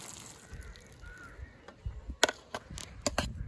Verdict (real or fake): real